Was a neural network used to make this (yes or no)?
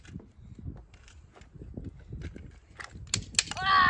no